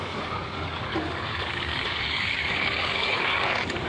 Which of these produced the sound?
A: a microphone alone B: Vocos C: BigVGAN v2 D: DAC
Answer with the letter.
D